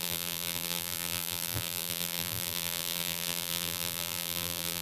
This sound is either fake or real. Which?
fake